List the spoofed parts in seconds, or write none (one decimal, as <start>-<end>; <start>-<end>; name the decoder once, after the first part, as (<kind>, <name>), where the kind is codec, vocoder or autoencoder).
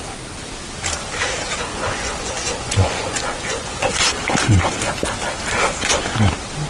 1.7-3.9 (vocoder, Vocos)